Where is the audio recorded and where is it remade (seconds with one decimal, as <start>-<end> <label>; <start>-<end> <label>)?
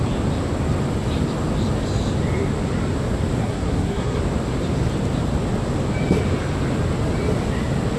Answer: 0.0-3.4 recorded; 3.4-4.2 remade; 4.2-8.0 recorded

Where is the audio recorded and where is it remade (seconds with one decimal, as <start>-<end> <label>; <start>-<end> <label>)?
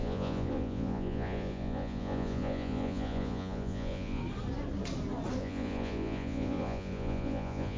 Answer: 0.0-4.2 remade; 4.2-5.4 recorded; 5.4-7.8 remade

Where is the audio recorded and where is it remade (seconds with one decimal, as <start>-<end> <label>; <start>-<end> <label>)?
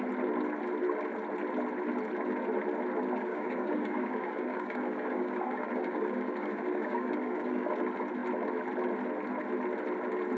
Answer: 0.0-3.2 recorded; 3.2-7.7 remade; 7.7-10.4 recorded